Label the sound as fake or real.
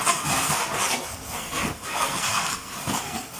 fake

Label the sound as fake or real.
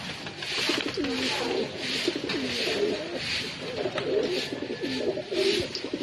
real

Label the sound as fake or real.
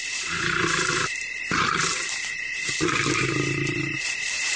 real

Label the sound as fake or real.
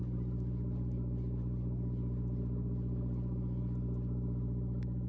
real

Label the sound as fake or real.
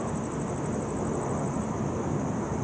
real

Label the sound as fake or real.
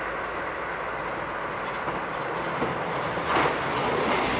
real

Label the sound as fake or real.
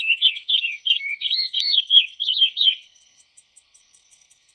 fake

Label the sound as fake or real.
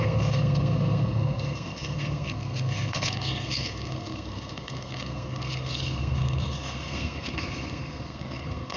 fake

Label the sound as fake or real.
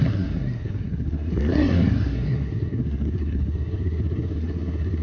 fake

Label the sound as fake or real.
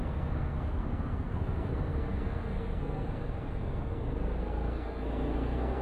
fake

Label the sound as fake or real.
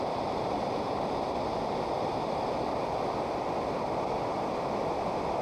real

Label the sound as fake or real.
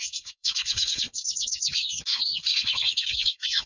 fake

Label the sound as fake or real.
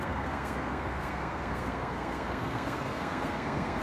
fake